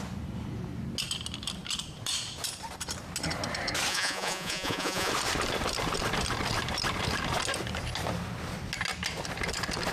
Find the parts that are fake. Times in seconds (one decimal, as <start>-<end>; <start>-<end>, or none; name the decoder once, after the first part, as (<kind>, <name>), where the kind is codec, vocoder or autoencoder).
3.9-5.1 (vocoder, Vocos)